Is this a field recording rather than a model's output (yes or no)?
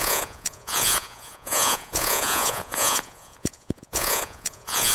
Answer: no